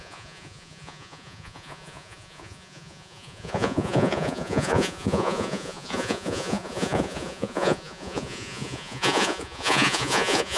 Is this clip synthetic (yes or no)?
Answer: yes